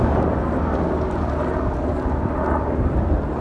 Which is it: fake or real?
real